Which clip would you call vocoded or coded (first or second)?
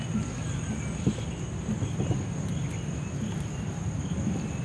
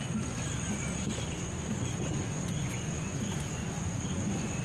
second